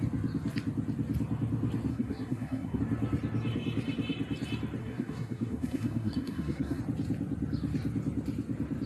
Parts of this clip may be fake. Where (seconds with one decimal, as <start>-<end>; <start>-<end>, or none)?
1.9-2.8; 4.8-6.8